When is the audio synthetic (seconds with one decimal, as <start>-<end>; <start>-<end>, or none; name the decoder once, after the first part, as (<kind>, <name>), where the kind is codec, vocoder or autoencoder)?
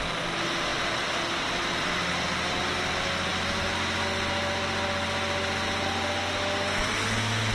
0.7-2.1 (vocoder, BigVGAN v2)